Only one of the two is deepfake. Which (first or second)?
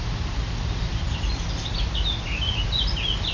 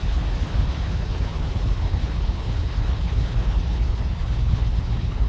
second